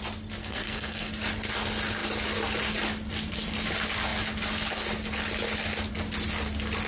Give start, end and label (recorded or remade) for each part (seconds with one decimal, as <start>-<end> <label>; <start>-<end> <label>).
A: 0.0-0.4 recorded; 0.4-1.1 remade; 1.1-6.9 recorded